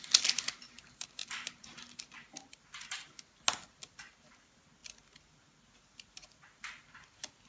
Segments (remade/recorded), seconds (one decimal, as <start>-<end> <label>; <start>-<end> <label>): 0.0-7.5 recorded